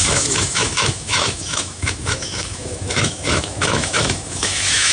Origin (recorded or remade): remade